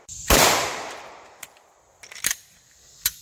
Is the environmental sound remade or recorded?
remade